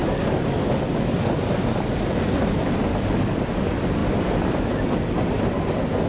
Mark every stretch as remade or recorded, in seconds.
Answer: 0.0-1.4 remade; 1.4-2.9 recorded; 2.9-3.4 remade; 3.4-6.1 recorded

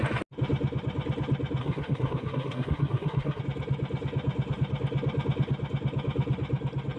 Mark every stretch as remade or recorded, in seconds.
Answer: 0.0-1.6 recorded; 1.6-3.4 remade; 3.4-7.0 recorded

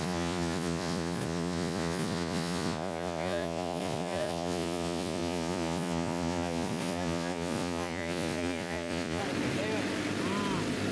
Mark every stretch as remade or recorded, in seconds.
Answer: 0.0-9.2 remade; 9.2-10.9 recorded

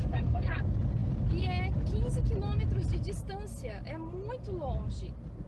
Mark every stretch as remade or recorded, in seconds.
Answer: 0.0-0.6 remade; 0.6-5.5 recorded

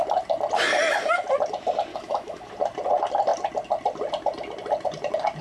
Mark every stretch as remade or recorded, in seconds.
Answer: 0.0-1.9 recorded; 1.9-2.5 remade; 2.5-5.4 recorded